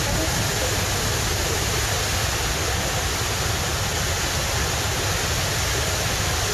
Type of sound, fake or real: real